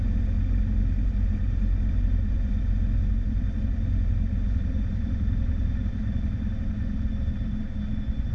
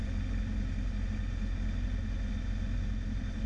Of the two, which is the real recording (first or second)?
second